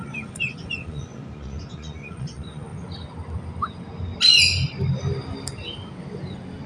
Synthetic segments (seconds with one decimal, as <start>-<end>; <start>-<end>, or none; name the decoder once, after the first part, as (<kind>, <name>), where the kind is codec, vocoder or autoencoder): 0.0-2.7 (vocoder, Vocos)